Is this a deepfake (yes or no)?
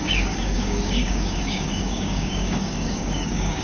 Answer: yes